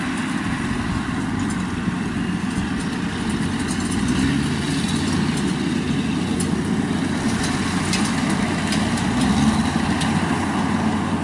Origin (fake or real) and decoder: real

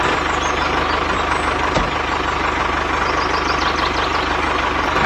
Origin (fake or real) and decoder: real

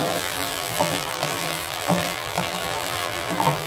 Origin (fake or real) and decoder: fake, vocoder, BigVGAN v2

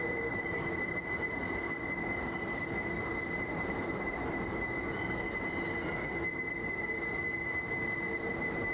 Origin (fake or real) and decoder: fake, vocoder, BigVGAN v2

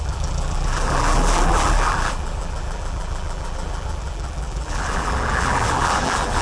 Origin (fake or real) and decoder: fake, vocoder, BigVGAN v2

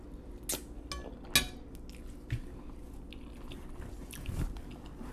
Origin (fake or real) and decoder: real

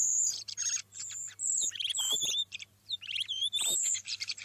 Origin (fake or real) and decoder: fake, vocoder, BigVGAN v2